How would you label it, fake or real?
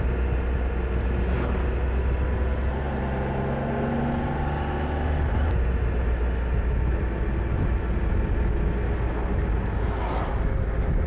real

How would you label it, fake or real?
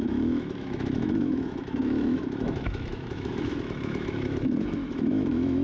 fake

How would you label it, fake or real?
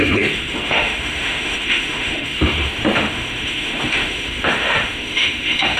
fake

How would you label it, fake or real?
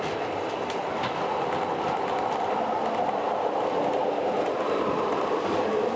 real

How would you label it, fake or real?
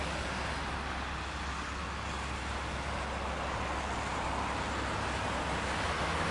real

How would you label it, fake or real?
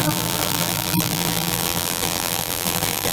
fake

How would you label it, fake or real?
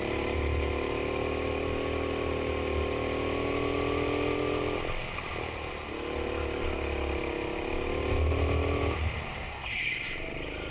real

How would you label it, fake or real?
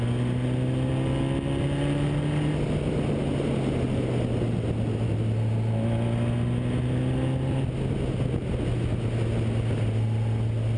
real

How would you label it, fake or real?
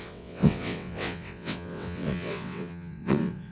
fake